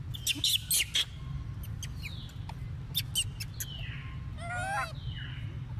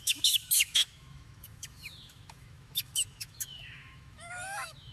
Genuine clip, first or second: first